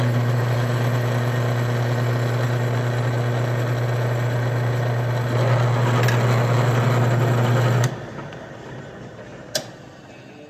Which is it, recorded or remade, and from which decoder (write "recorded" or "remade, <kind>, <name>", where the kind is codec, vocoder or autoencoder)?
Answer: recorded